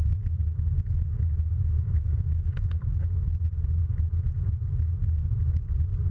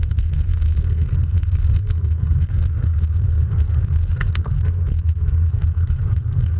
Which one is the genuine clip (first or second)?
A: first